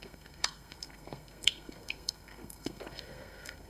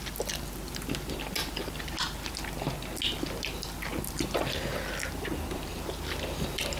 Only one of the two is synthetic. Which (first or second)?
first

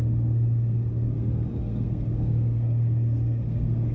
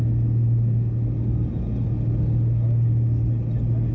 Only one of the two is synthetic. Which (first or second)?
first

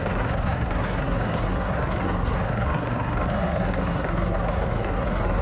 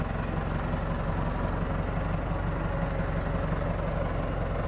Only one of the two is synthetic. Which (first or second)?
first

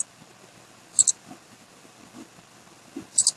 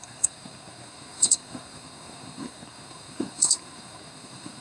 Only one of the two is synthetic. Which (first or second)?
second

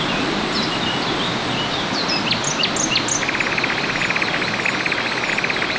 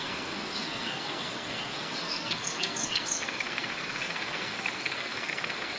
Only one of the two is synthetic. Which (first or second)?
second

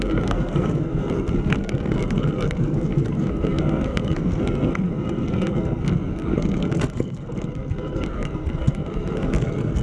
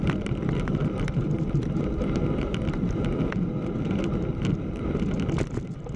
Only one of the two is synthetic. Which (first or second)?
first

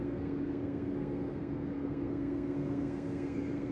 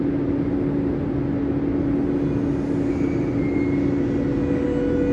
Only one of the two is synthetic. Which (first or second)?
first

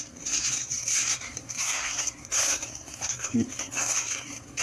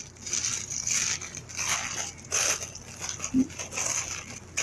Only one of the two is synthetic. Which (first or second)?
first